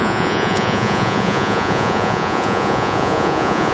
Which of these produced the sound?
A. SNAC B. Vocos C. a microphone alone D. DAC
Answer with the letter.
B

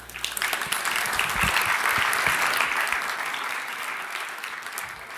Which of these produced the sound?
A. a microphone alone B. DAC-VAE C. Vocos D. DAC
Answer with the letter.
A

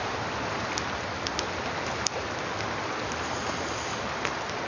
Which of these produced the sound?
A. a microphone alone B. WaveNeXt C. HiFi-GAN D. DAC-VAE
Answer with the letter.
A